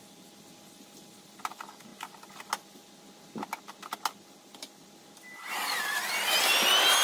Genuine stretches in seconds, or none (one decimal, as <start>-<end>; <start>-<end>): 0.0-7.0